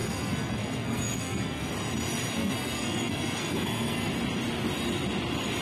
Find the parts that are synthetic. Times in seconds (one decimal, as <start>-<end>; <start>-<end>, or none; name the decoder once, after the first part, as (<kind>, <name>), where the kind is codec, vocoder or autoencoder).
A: 0.0-1.7 (codec, SNAC); 2.4-4.1